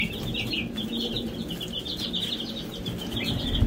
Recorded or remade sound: recorded